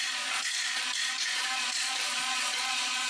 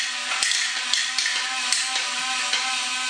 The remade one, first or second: first